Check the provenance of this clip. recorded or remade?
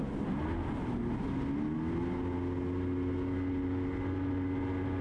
recorded